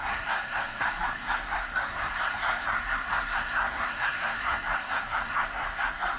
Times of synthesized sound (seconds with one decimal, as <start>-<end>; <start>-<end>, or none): 0.0-6.2